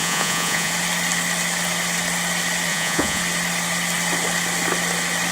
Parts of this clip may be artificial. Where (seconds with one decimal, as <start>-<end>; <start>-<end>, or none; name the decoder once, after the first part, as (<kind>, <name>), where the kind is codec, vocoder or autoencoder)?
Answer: 0.0-0.7 (vocoder, Vocos); 2.7-3.2